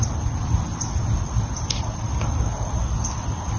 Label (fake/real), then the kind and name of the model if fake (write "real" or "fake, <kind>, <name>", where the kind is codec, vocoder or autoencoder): real